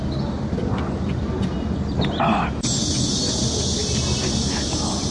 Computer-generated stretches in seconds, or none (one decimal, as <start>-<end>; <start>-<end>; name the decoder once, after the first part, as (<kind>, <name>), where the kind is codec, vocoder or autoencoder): none